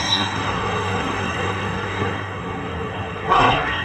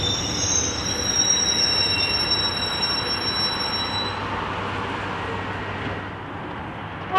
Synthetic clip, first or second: first